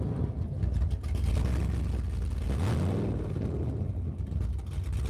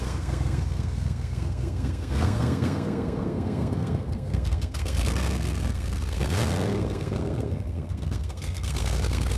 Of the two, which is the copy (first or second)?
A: second